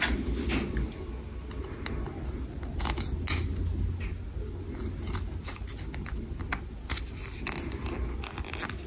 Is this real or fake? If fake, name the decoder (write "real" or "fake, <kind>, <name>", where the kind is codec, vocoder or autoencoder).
real